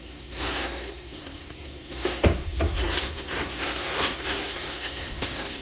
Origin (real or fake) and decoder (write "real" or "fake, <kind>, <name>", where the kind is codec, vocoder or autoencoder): fake, codec, SNAC